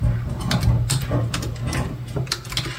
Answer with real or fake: real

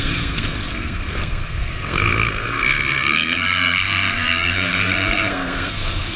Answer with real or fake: fake